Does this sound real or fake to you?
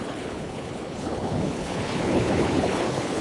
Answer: fake